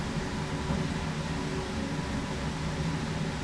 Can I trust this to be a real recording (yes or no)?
yes